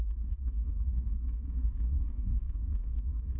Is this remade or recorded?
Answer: remade